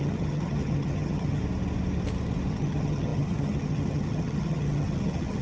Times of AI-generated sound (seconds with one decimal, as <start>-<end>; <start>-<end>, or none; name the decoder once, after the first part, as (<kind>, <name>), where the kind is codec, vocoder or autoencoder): 0.0-1.4 (vocoder, HiFi-GAN); 2.5-5.4